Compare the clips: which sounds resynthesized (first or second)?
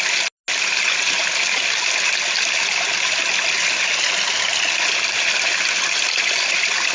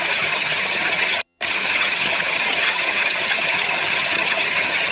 second